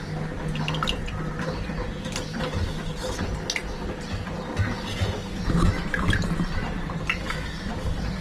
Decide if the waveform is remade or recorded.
recorded